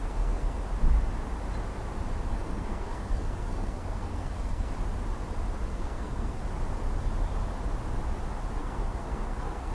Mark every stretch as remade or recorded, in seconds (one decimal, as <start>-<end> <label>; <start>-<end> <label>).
0.0-0.6 remade; 0.6-2.3 recorded; 2.3-4.7 remade; 4.7-5.7 recorded; 5.7-6.4 remade; 6.4-8.6 recorded; 8.6-9.7 remade